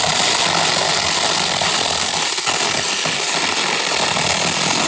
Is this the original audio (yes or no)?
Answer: yes